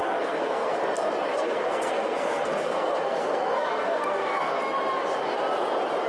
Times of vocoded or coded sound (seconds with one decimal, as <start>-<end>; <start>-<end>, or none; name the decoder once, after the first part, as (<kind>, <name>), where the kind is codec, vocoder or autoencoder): 0.0-0.8 (codec, SNAC); 1.3-4.6

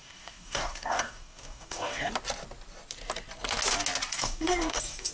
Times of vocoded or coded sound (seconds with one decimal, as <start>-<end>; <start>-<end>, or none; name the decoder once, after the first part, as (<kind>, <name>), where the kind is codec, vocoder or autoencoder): 0.0-2.1 (codec, DAC); 4.1-5.1